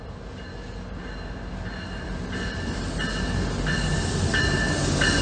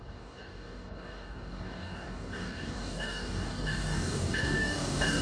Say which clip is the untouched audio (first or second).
first